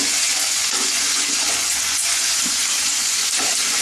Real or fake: fake